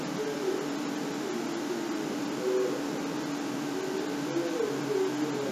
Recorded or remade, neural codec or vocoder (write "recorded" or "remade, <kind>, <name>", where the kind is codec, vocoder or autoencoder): recorded